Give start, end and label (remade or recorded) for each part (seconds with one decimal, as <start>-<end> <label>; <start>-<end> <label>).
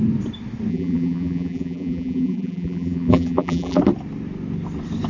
0.0-0.7 recorded; 0.7-3.8 remade; 3.8-5.1 recorded